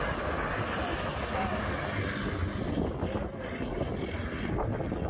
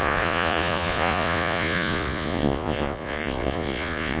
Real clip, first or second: first